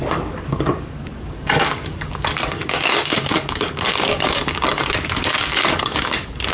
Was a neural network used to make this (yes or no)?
yes